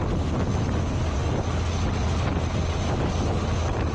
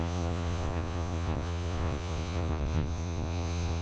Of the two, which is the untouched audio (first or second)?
first